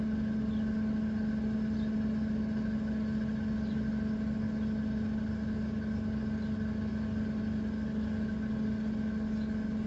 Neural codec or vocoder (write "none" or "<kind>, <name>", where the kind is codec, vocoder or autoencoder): none